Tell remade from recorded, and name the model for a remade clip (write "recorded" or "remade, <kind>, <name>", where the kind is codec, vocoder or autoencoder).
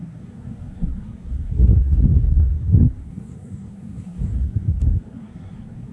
remade, codec, SNAC